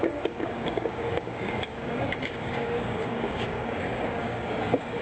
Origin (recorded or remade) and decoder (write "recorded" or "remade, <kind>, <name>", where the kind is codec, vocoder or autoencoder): remade, codec, DAC